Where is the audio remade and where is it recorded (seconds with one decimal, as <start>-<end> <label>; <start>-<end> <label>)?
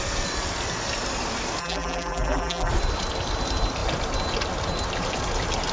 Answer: 0.0-1.6 recorded; 1.6-2.7 remade; 2.7-5.7 recorded